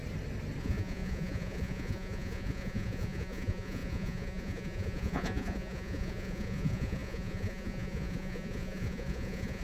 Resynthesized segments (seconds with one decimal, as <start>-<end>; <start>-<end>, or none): 0.6-9.6